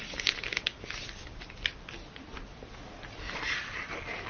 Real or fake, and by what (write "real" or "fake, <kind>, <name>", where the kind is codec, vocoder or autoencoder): real